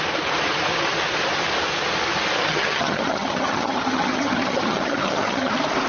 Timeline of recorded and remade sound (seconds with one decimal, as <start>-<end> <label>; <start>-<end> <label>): 0.0-2.4 recorded; 2.4-5.5 remade; 5.5-5.9 recorded